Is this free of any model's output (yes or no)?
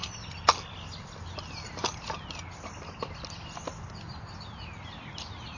yes